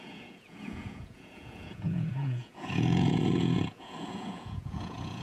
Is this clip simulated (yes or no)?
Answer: yes